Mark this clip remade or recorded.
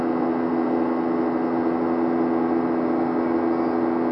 recorded